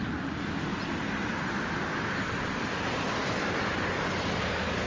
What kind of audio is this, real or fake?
real